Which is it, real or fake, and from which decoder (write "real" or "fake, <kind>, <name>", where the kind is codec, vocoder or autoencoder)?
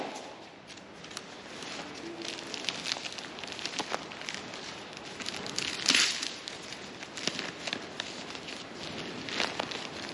real